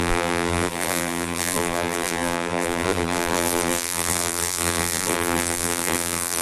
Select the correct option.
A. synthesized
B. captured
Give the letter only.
A